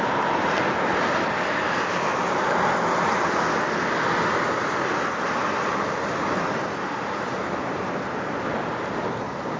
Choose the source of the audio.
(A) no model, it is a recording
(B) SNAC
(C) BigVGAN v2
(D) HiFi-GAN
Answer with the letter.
A